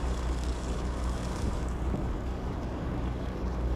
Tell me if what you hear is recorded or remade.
remade